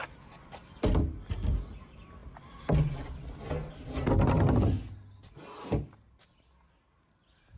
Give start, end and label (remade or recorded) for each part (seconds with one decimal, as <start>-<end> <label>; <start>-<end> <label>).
0.0-7.6 recorded